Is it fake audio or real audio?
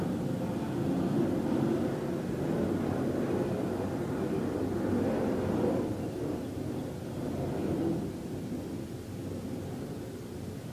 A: real